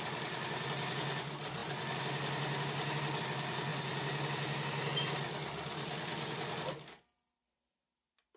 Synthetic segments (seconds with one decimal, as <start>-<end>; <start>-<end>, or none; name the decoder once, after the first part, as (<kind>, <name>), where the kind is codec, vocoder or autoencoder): none